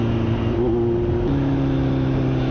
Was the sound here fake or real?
real